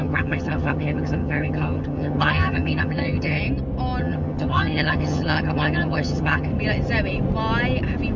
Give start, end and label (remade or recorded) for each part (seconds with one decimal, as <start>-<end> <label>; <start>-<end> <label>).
0.0-3.4 remade; 3.4-4.0 recorded; 4.0-6.5 remade; 6.5-8.2 recorded